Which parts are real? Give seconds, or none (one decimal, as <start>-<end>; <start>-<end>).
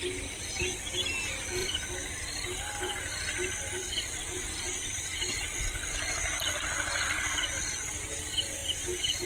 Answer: 0.0-1.6; 5.9-8.6